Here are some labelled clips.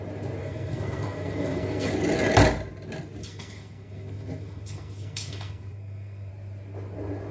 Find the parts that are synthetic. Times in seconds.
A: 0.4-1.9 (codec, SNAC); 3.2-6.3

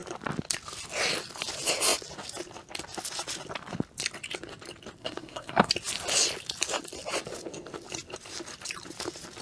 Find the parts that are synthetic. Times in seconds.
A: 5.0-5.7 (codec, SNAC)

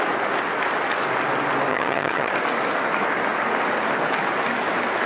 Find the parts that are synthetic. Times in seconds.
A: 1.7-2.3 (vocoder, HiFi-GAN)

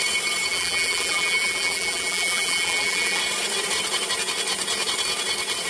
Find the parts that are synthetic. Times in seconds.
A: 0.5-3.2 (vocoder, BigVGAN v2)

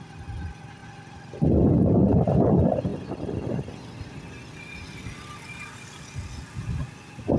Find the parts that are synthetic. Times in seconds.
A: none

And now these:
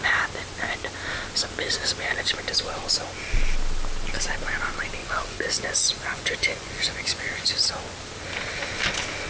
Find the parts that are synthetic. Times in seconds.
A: 5.0-7.7 (vocoder, Vocos)

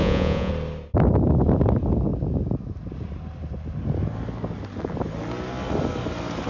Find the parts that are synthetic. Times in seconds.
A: 0.0-0.5 (vocoder, Vocos)

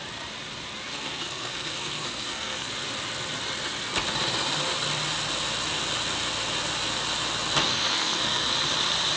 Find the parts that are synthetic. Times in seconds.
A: 0.9-2.7 (codec, SNAC); 7.7-8.5